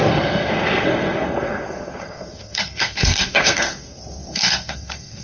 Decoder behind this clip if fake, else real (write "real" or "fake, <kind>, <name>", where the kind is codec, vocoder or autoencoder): fake, codec, SNAC